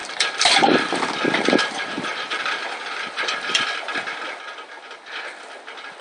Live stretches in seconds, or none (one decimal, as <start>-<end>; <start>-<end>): 1.0-1.6; 3.9-6.0